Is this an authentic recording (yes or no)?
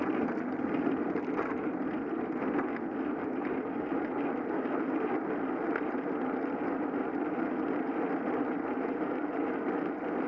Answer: yes